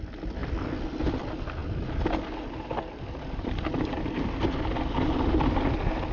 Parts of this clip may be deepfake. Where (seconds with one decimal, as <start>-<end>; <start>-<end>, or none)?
0.4-1.2